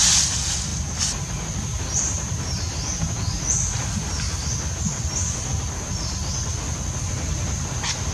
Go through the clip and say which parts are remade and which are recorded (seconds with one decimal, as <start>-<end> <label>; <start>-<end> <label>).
0.0-8.1 recorded